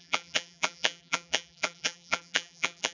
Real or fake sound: fake